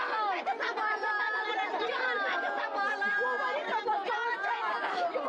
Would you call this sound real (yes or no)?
yes